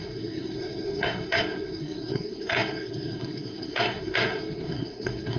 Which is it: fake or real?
fake